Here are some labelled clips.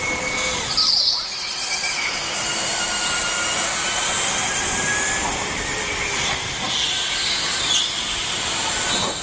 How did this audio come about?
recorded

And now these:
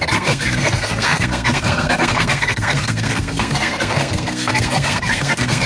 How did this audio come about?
remade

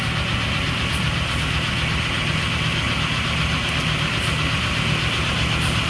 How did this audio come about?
recorded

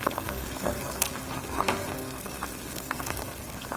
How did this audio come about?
remade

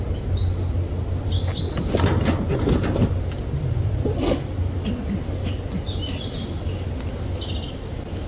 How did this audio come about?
recorded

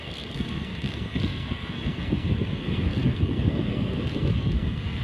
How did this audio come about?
remade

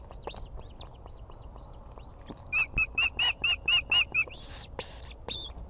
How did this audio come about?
recorded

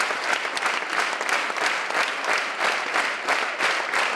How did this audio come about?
recorded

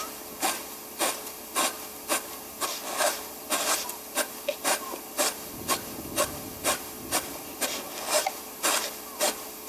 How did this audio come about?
recorded